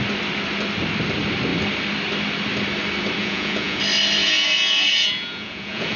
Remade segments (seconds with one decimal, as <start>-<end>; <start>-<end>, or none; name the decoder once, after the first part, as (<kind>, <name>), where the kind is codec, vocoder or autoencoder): 3.2-3.8 (vocoder, Vocos); 4.2-6.0